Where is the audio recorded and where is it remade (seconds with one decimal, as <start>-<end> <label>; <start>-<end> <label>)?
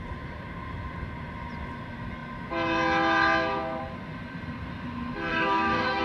0.0-5.3 recorded; 5.3-6.0 remade